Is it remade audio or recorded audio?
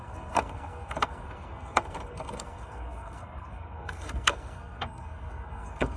remade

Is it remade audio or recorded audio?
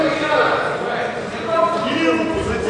recorded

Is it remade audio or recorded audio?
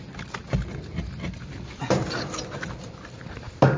recorded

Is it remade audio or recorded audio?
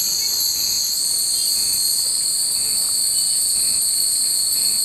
recorded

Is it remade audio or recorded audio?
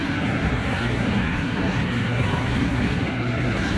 remade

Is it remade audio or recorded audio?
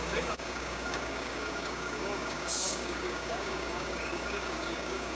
remade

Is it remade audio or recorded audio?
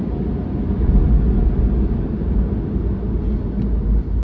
recorded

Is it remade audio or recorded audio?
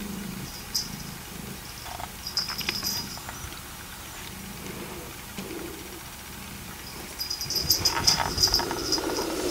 recorded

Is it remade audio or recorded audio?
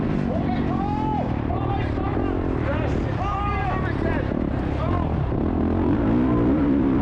recorded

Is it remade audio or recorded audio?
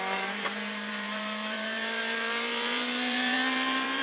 remade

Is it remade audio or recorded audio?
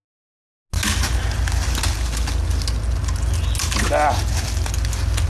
recorded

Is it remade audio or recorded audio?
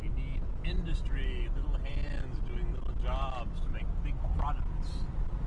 recorded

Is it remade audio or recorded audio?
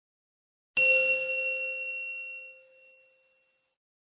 recorded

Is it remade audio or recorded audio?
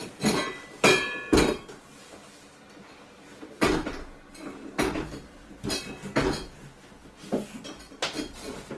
recorded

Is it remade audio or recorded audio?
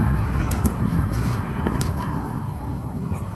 remade